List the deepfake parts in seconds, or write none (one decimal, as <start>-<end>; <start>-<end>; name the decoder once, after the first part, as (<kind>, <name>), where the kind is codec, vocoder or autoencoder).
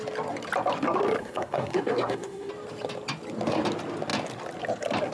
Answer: 1.2-2.5 (codec, SNAC)